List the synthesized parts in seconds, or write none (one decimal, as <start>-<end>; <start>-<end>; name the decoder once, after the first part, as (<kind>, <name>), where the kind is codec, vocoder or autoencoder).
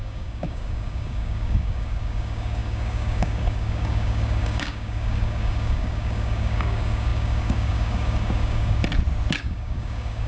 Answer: 0.0-8.8 (codec, DAC); 9.4-10.3